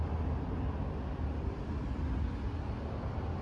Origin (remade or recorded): recorded